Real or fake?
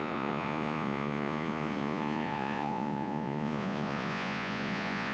fake